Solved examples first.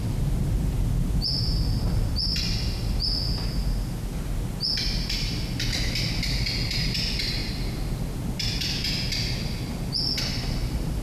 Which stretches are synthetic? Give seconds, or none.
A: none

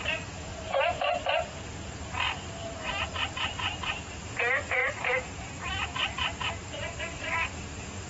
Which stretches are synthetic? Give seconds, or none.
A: 0.5-4.1 (vocoder, BigVGAN v2); 4.8-7.0

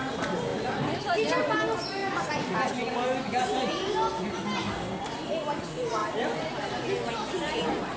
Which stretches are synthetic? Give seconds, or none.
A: 0.5-1.0 (vocoder, BigVGAN v2)

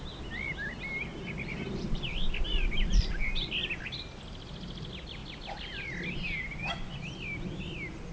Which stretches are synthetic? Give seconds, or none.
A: 1.5-3.8 (vocoder, BigVGAN v2); 5.2-6.7

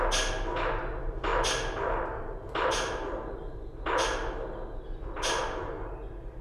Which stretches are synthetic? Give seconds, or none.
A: none

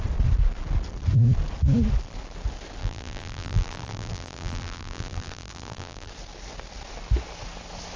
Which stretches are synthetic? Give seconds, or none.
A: 2.8-6.1 (vocoder, BigVGAN v2)

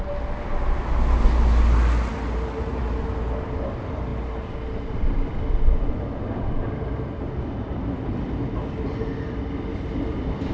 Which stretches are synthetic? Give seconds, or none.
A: none